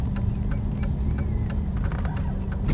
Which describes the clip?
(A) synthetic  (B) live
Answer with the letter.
B